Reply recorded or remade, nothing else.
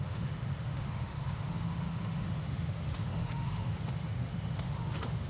remade